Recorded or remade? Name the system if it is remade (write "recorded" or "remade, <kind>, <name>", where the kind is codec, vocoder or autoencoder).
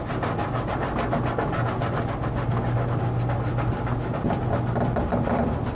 recorded